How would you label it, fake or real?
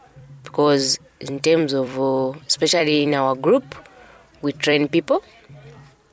fake